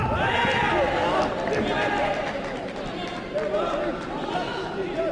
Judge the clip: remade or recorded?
recorded